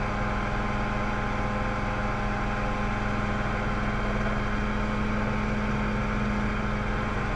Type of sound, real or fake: real